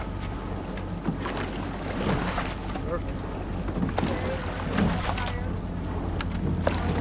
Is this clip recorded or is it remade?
recorded